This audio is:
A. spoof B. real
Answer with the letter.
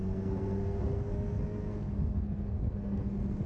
A